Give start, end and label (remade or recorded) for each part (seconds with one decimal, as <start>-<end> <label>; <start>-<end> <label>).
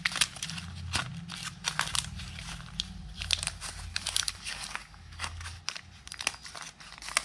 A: 0.0-3.9 recorded; 3.9-5.6 remade; 5.6-7.2 recorded